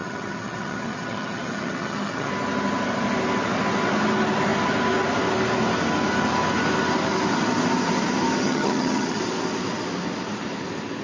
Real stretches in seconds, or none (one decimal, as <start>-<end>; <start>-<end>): 2.3-8.4; 9.2-11.0